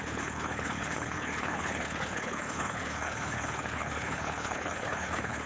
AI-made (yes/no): yes